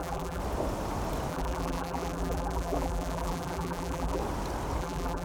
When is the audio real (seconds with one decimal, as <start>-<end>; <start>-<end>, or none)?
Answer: 0.4-1.3; 4.2-4.8